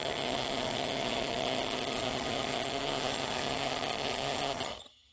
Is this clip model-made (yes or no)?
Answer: yes